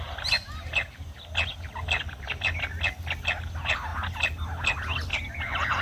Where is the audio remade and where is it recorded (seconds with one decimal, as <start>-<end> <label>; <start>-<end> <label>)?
0.0-5.8 recorded